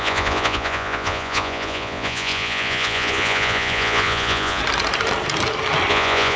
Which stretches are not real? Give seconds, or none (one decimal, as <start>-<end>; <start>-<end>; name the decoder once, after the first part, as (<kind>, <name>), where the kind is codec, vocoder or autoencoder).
0.0-4.6 (vocoder, Vocos); 5.9-6.4